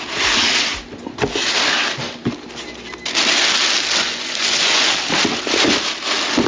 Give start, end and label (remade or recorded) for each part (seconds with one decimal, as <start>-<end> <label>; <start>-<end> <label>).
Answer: 0.0-4.0 recorded; 4.0-4.9 remade; 4.9-6.5 recorded